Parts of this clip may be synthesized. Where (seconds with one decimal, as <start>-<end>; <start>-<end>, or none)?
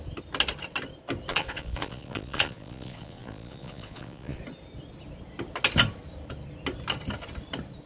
1.3-4.4